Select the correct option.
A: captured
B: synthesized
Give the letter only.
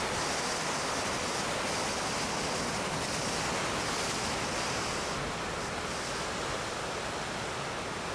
A